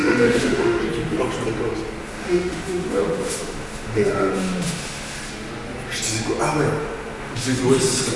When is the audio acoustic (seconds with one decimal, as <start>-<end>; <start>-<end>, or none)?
0.8-2.0; 5.2-6.8; 7.6-8.2